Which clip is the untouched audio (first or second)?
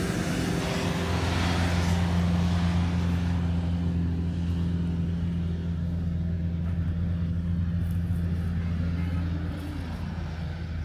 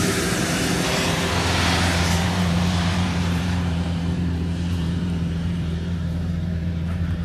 first